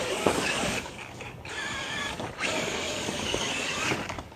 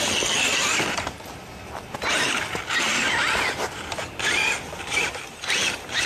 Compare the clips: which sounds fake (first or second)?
first